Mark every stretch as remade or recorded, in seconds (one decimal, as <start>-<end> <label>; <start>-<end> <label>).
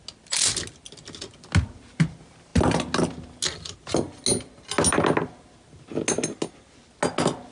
0.0-7.5 recorded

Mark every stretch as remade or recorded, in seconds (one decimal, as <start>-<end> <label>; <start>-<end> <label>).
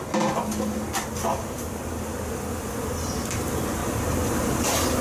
0.0-1.3 recorded; 1.3-2.3 remade; 2.3-3.8 recorded; 3.8-4.6 remade; 4.6-5.0 recorded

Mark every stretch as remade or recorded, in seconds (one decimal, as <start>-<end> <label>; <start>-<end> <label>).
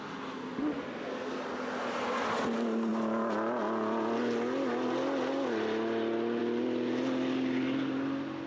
0.0-8.5 recorded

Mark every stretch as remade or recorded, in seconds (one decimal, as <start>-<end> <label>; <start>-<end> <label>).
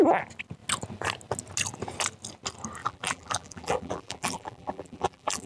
0.0-2.8 recorded; 2.8-5.5 remade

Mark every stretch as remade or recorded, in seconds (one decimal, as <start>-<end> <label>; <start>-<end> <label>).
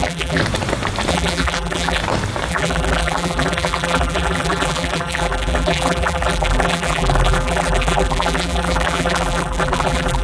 0.0-0.4 remade; 0.4-1.1 recorded; 1.1-2.0 remade; 2.0-2.5 recorded; 2.5-10.2 remade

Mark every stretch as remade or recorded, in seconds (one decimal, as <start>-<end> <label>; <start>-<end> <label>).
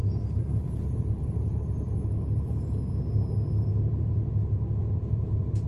0.0-2.7 remade; 2.7-3.7 recorded; 3.7-4.3 remade; 4.3-4.8 recorded; 4.8-5.7 remade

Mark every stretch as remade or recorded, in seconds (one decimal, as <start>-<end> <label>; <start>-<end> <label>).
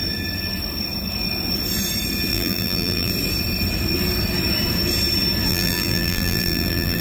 0.0-2.3 recorded; 2.3-3.1 remade; 3.1-5.5 recorded; 5.5-7.0 remade